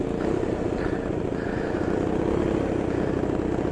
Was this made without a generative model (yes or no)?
yes